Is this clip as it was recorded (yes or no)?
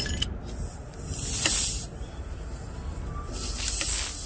yes